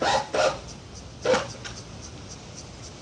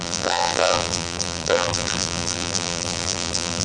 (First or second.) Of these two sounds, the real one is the first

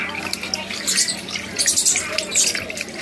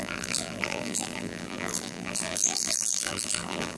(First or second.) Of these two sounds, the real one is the first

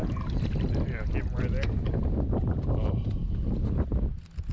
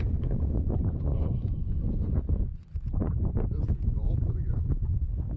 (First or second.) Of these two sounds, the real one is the first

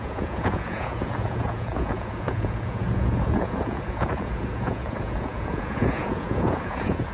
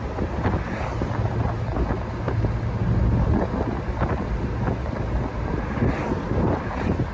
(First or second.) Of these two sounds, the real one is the second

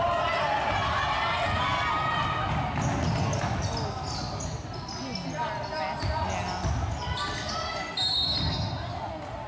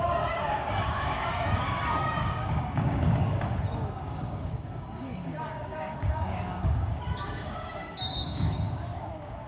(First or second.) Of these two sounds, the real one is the first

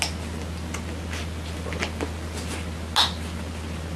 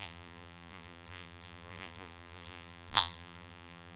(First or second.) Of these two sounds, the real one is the first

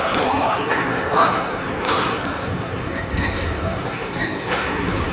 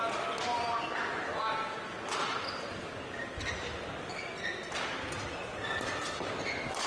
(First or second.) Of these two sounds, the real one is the second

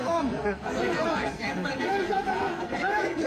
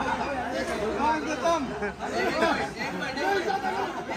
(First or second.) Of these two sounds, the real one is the second